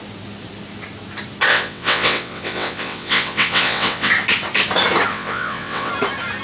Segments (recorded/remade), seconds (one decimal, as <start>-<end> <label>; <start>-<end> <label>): 0.0-1.5 recorded; 1.5-4.1 remade; 4.1-5.1 recorded; 5.1-5.9 remade; 5.9-6.4 recorded